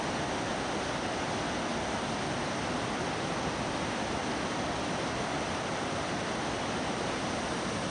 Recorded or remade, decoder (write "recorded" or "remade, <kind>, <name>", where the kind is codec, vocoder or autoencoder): recorded